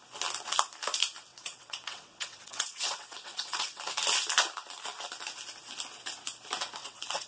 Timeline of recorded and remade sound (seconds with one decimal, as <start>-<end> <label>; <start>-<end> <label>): 0.0-1.3 recorded; 1.3-3.8 remade; 3.8-6.8 recorded; 6.8-7.3 remade